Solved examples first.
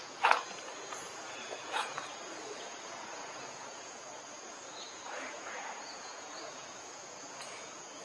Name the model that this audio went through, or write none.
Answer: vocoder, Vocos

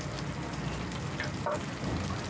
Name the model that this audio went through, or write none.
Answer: none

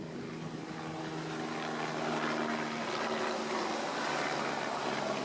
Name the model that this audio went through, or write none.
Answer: none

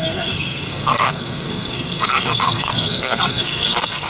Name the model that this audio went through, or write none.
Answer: codec, SNAC